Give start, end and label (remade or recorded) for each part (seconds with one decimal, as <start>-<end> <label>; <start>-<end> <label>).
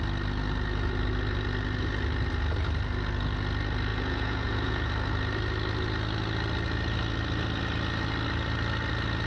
0.0-3.9 recorded; 3.9-4.9 remade; 4.9-9.3 recorded